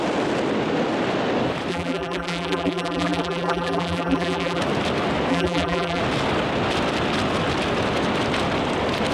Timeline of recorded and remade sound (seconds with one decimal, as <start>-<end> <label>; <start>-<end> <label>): 0.0-1.7 recorded; 1.7-4.6 remade; 4.6-5.3 recorded; 5.3-6.0 remade; 6.0-9.1 recorded